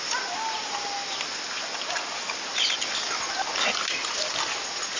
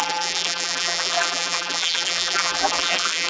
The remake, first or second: second